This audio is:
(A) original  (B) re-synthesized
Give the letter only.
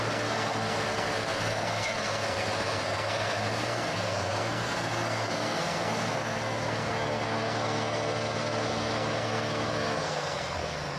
B